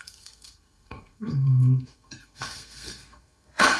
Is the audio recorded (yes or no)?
no